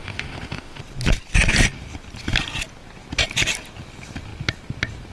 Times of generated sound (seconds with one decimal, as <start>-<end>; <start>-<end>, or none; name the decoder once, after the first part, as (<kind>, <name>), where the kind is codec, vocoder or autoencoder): 0.0-0.8 (autoencoder, DAC-VAE)